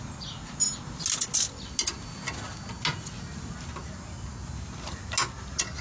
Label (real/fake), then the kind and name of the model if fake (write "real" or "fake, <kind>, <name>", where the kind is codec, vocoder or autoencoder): real